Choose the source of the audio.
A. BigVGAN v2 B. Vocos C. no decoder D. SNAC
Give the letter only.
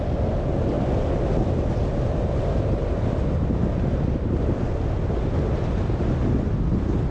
C